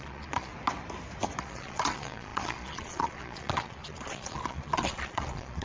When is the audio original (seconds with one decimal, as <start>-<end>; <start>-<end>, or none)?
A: 0.5-1.4